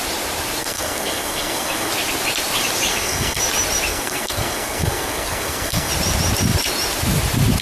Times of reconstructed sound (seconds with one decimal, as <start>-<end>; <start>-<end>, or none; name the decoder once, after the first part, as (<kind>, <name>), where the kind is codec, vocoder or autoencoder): 0.6-1.9 (codec, SNAC); 2.9-3.4; 3.9-5.9